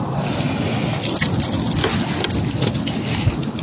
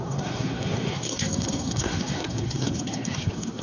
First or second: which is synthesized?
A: second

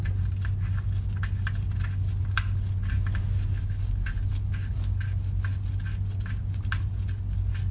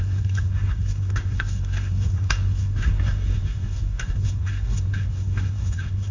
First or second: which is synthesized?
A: second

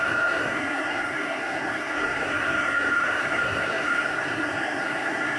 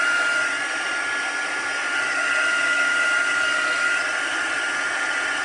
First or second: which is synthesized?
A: first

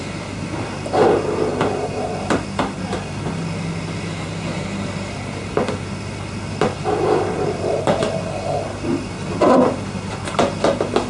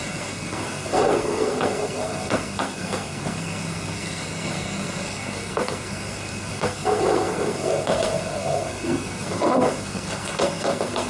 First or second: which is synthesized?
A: second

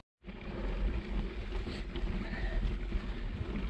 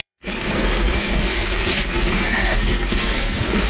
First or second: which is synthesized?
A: second